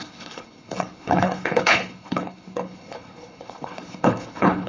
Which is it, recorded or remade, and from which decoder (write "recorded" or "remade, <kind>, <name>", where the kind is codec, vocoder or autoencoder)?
remade, codec, HILCodec